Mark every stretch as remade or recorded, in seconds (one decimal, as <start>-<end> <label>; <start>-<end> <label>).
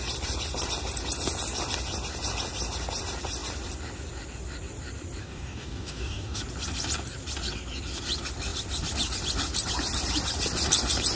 0.0-5.2 recorded; 5.2-6.4 remade; 6.4-11.1 recorded